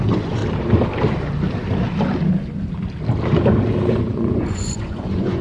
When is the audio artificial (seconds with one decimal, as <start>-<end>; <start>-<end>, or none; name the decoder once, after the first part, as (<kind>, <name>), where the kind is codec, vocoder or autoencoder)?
0.0-0.4 (vocoder, Vocos); 3.6-5.4